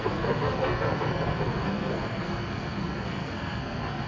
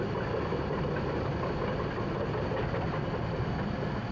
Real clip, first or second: second